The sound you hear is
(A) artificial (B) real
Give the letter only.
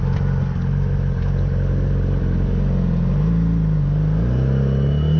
B